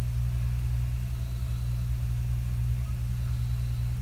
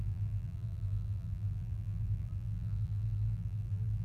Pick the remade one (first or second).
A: second